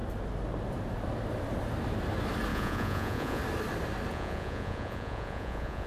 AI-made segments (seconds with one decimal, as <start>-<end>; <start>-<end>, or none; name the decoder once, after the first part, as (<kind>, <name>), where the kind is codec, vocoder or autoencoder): 2.5-3.4 (vocoder, Vocos); 4.1-5.9